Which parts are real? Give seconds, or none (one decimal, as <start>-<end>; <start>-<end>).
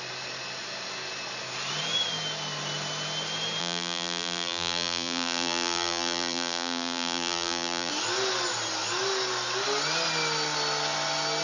0.0-3.6; 7.9-11.4